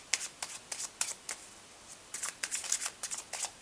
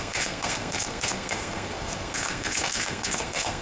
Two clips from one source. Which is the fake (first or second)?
second